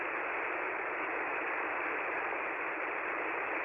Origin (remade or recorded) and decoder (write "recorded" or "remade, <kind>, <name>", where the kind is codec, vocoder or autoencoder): remade, vocoder, BigVGAN v2